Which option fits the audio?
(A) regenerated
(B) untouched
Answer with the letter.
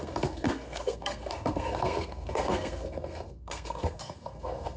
A